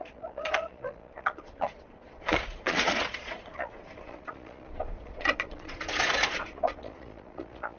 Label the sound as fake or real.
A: fake